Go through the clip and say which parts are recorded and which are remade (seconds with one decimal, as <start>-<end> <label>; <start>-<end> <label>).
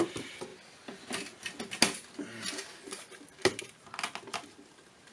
0.0-5.1 recorded